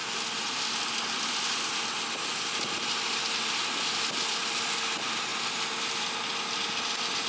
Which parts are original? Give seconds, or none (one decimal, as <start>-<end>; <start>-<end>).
0.0-7.3